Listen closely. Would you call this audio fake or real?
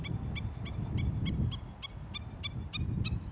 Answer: real